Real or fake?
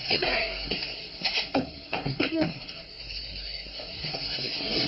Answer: fake